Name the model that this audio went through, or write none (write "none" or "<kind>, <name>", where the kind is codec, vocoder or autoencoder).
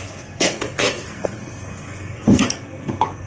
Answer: codec, SNAC